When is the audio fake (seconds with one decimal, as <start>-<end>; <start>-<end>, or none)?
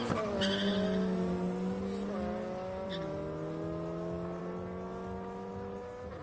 none